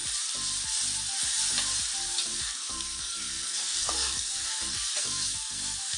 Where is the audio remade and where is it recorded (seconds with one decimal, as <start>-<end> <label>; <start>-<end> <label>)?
0.0-2.1 recorded; 2.1-6.0 remade